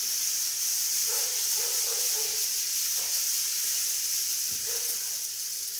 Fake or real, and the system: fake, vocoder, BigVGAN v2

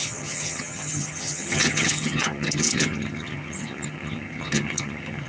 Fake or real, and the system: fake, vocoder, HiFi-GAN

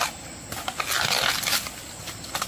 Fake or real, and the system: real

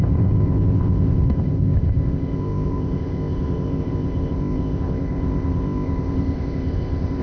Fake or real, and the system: fake, codec, ZipCodec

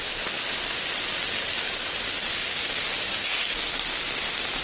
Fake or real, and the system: real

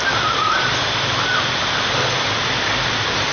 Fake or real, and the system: real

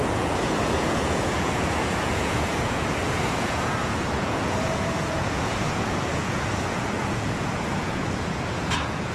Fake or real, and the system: fake, vocoder, Vocos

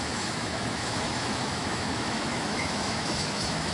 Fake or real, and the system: fake, autoencoder, DAC-VAE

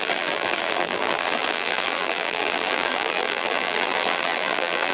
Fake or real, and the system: fake, vocoder, BigVGAN v2